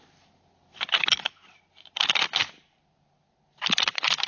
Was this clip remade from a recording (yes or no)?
no